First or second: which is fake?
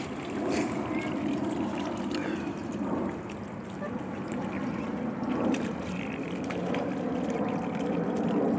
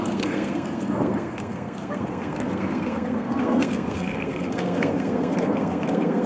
second